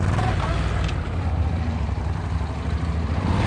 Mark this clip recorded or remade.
recorded